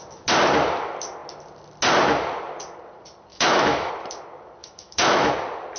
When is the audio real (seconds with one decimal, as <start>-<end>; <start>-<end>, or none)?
0.0-3.3; 3.9-4.6; 5.3-5.8